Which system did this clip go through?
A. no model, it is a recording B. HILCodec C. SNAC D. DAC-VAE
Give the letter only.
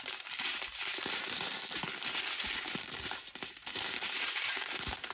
A